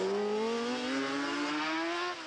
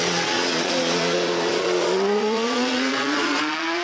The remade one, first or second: second